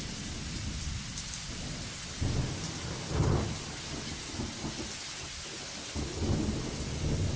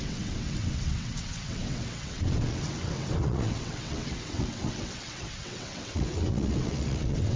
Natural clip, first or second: first